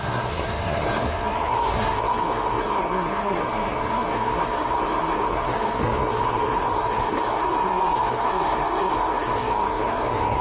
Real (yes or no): no